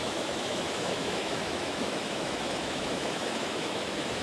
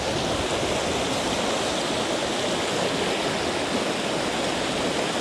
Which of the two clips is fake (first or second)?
first